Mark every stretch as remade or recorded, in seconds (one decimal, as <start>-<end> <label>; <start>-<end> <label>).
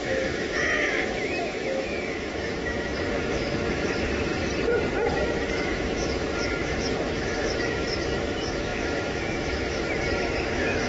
0.0-4.3 remade; 4.3-5.2 recorded; 5.2-10.9 remade